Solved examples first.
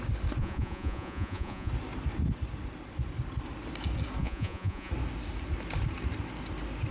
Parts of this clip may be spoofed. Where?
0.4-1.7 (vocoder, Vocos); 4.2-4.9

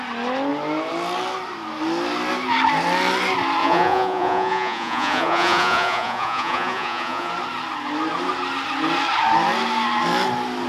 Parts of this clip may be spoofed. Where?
3.6-7.3 (vocoder, Vocos)

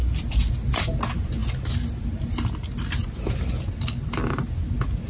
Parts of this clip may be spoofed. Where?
none

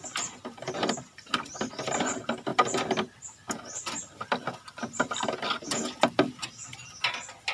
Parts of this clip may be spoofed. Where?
none

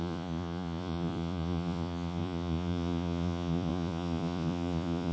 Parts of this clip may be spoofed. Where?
0.0-5.1 (vocoder, Vocos)

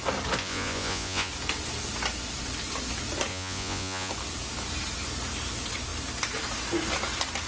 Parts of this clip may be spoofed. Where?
0.4-1.3 (vocoder, Vocos); 3.3-4.1

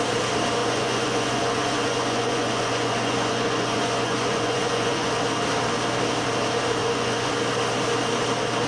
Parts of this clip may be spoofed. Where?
0.6-5.1 (vocoder, Vocos); 6.8-7.3